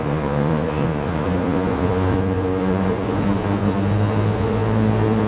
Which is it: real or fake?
fake